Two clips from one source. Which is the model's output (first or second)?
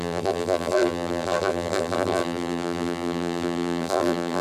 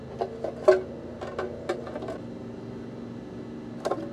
first